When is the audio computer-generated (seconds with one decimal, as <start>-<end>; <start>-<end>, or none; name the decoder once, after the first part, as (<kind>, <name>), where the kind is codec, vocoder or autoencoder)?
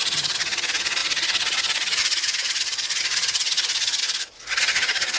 0.0-4.0 (vocoder, HiFi-GAN); 4.6-5.2